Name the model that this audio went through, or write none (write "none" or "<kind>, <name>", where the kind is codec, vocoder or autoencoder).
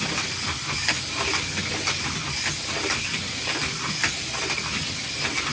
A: none